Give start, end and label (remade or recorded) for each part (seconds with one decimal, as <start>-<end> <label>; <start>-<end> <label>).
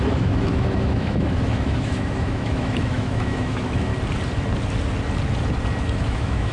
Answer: 0.0-3.9 remade; 3.9-5.8 recorded; 5.8-6.5 remade